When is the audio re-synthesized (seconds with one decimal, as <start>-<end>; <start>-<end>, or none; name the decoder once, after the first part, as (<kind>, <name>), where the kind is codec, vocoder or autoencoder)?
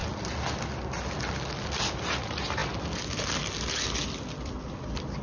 none